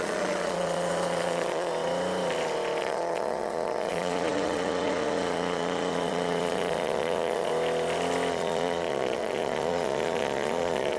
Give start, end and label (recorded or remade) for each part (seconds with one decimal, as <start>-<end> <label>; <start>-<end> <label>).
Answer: 0.0-1.7 remade; 1.7-2.8 recorded; 2.8-7.5 remade; 7.5-8.3 recorded; 8.3-11.0 remade